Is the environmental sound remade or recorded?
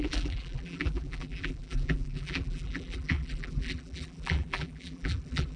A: remade